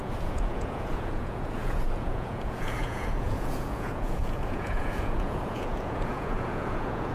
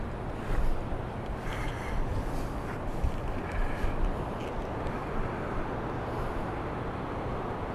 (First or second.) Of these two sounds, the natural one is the second